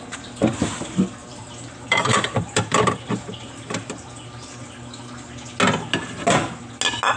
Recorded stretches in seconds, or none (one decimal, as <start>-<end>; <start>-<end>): 0.0-1.2; 5.5-7.2